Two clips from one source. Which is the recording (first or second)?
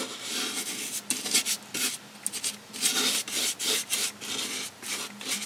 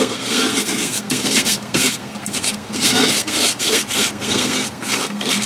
first